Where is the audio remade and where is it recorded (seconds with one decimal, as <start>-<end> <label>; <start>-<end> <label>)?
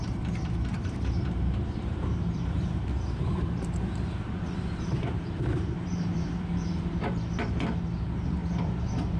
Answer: 0.0-9.2 remade